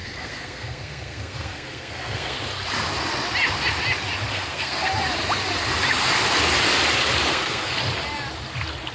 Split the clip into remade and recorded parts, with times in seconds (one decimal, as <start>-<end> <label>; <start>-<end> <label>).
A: 0.0-2.4 remade; 2.4-4.3 recorded; 4.3-4.9 remade; 4.9-7.3 recorded; 7.3-7.8 remade; 7.8-8.9 recorded